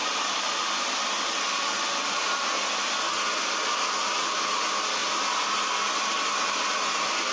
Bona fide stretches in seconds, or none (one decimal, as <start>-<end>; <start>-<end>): 1.3-7.3